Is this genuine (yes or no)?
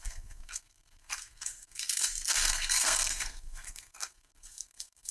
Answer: no